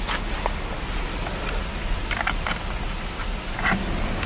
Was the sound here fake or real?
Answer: real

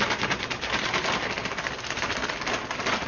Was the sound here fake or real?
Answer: real